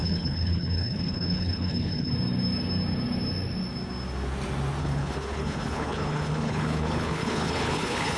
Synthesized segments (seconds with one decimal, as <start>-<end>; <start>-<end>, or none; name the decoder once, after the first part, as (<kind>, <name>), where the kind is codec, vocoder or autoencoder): 0.0-2.1 (codec, HILCodec); 4.8-8.2